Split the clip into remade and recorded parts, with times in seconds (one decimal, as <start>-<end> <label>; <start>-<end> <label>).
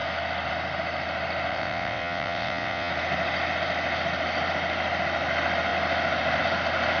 0.0-1.5 recorded; 1.5-2.9 remade; 2.9-7.0 recorded